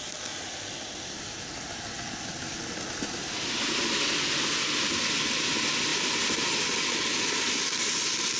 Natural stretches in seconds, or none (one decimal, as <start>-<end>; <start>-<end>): 0.0-5.9